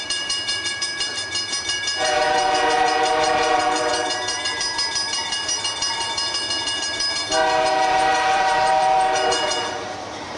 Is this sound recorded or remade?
remade